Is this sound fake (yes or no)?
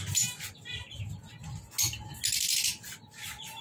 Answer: no